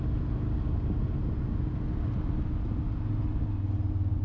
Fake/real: real